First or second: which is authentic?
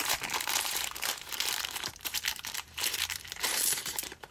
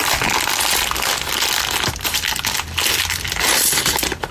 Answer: second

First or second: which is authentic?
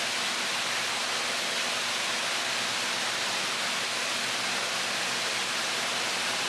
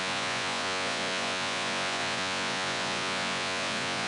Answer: first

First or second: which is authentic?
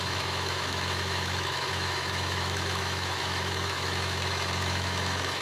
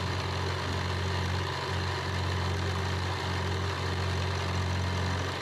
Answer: second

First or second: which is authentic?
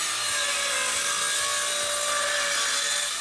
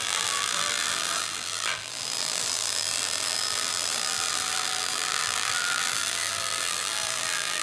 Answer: first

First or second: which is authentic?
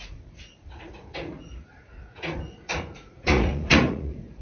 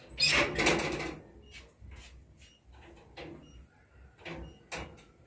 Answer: second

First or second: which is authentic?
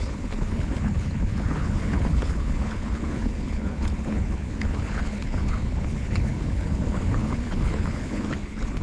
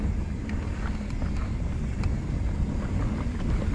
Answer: second